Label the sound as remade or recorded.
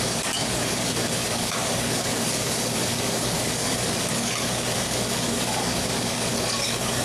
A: remade